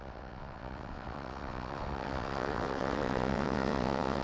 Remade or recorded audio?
remade